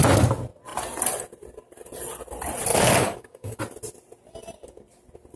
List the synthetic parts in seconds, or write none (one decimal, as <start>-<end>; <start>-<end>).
2.7-3.6